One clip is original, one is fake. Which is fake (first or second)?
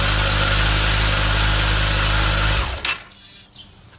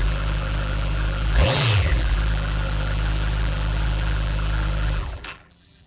second